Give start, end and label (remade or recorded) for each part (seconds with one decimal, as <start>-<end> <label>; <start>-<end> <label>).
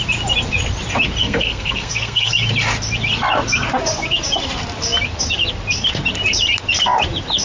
0.0-1.2 recorded; 1.2-2.3 remade; 2.3-7.4 recorded